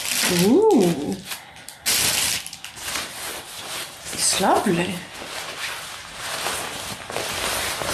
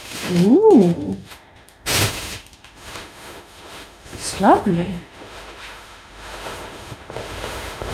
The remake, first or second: second